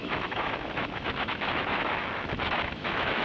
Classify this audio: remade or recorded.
remade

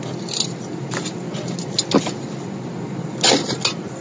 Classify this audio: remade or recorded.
recorded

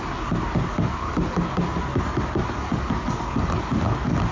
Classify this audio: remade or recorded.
recorded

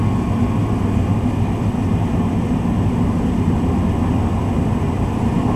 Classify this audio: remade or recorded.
recorded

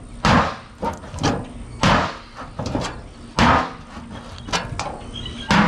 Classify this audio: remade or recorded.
recorded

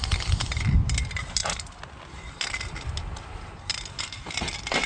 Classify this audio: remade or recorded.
recorded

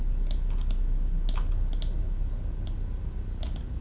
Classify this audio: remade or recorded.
recorded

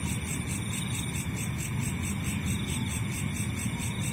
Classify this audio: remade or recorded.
recorded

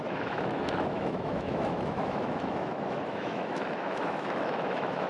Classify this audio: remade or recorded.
remade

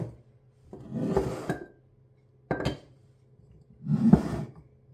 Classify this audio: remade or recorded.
recorded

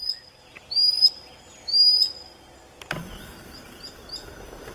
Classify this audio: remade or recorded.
recorded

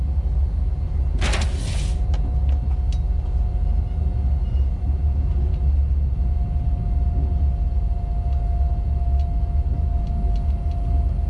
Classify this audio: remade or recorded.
recorded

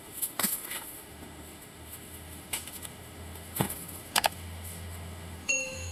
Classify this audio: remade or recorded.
remade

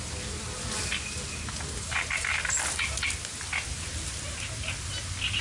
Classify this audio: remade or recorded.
recorded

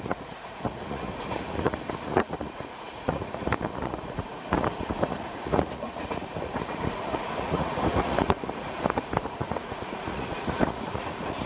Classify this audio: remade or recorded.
remade